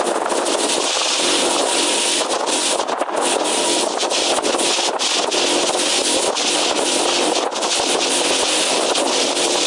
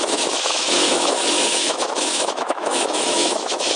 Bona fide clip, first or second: first